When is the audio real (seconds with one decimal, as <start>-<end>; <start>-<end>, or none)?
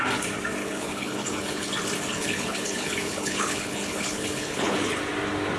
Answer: 0.0-0.6; 1.7-2.1; 5.0-5.6